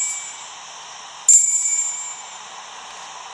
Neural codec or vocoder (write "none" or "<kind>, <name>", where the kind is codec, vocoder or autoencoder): none